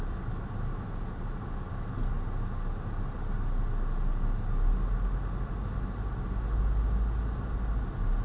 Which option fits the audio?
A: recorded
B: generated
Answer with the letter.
A